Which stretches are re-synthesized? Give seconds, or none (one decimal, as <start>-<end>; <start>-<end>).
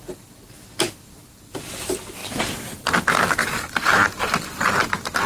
3.4-4.1